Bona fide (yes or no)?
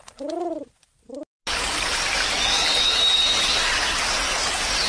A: yes